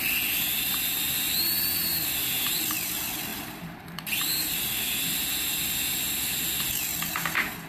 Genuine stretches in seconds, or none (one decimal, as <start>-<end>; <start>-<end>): 0.0-3.3; 4.1-7.7